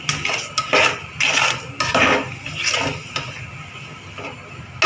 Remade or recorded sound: recorded